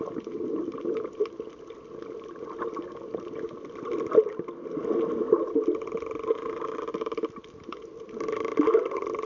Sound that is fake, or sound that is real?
real